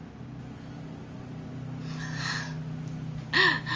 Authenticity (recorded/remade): recorded